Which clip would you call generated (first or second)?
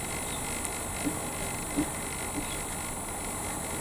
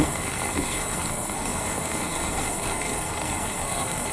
second